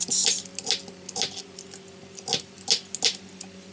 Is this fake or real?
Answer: real